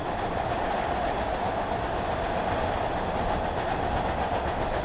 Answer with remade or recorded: recorded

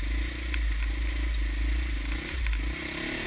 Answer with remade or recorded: recorded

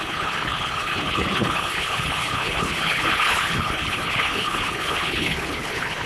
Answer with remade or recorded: remade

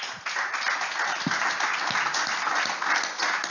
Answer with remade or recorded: recorded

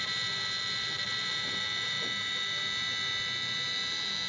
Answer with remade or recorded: remade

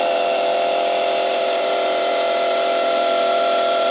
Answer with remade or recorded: remade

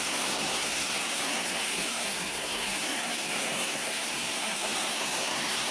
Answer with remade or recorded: remade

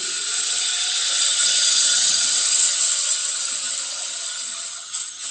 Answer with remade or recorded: remade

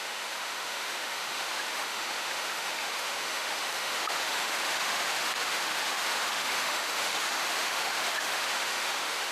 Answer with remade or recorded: remade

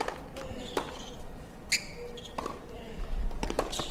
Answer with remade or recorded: recorded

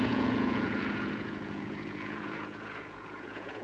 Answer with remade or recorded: remade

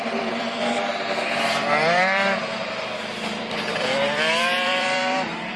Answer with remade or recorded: remade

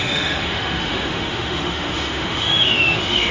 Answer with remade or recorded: remade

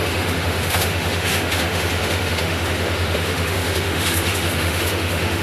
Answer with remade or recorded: remade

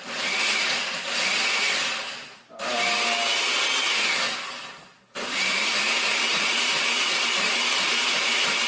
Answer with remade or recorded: recorded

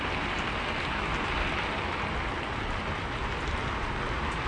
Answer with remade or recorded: recorded